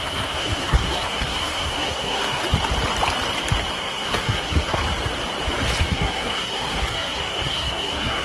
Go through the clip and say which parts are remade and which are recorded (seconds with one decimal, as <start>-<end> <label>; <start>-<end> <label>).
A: 0.0-2.4 remade; 2.4-3.7 recorded; 3.7-4.8 remade; 4.8-5.9 recorded; 5.9-8.2 remade